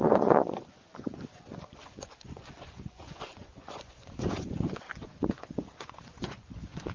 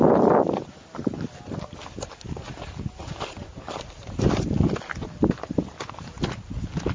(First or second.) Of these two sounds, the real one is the second